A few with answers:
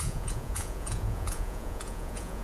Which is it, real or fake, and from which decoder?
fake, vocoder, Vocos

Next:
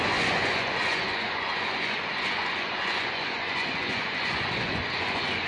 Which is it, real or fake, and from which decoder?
fake, vocoder, Vocos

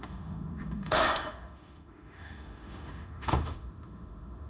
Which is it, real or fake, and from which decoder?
fake, autoencoder, DAC-VAE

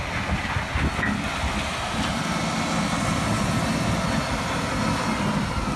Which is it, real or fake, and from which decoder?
real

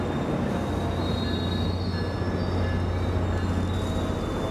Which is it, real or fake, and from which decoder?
real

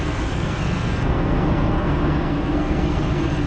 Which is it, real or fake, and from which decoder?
fake, codec, SNAC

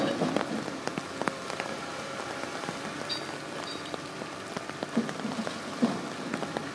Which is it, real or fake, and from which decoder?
real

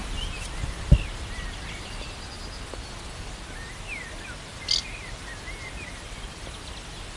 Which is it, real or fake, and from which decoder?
real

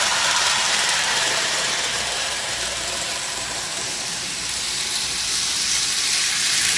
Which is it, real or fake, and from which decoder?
fake, vocoder, BigVGAN v2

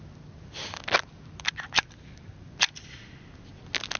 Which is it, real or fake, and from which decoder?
real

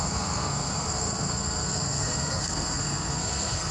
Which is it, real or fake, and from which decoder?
fake, codec, SNAC